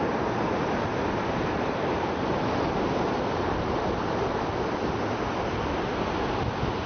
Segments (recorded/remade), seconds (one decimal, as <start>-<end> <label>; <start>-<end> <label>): 0.0-0.9 recorded; 0.9-4.5 remade; 4.5-6.9 recorded